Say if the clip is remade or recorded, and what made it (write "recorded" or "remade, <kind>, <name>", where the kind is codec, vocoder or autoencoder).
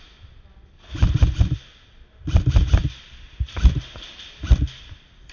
recorded